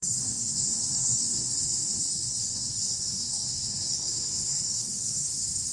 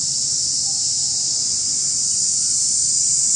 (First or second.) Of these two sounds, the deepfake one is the first